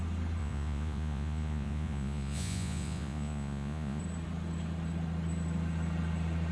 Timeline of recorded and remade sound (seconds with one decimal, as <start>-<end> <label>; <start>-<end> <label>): 0.0-0.4 recorded; 0.4-4.0 remade; 4.0-6.5 recorded